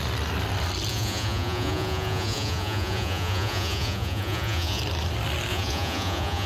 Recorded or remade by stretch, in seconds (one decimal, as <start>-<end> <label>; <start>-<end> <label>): 0.0-0.9 recorded; 0.9-4.8 remade; 4.8-5.5 recorded; 5.5-6.5 remade